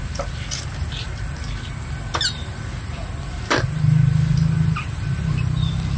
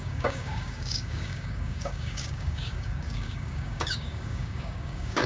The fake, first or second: second